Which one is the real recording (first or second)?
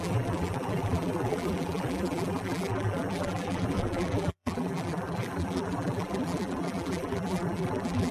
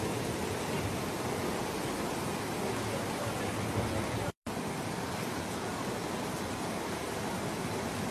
second